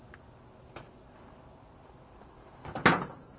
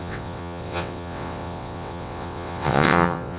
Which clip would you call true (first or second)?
first